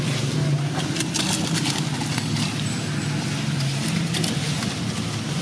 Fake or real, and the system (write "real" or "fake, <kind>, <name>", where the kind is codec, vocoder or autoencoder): real